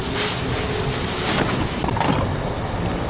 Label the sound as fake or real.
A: real